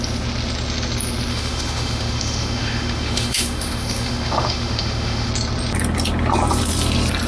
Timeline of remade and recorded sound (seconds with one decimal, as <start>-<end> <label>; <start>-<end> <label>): 0.0-1.3 recorded; 1.3-5.3 remade; 5.3-7.3 recorded